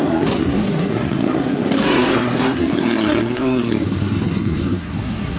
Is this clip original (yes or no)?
no